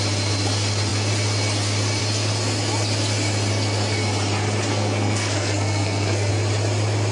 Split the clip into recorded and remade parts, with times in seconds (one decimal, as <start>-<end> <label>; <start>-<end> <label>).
0.0-4.7 recorded; 4.7-6.3 remade; 6.3-7.1 recorded